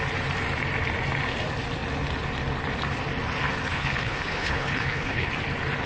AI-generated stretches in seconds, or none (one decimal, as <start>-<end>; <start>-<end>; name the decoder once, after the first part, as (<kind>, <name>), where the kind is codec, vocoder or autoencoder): 3.7-5.3 (codec, HILCodec)